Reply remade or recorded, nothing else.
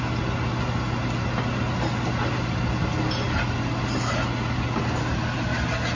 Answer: recorded